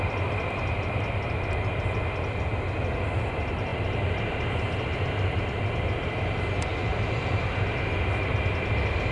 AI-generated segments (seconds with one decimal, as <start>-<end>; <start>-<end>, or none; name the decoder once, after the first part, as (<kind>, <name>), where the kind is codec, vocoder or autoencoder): none